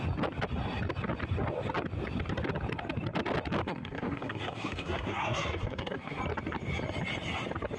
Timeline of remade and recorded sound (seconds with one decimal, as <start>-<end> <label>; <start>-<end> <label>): 0.0-3.6 recorded; 3.6-6.2 remade; 6.2-7.8 recorded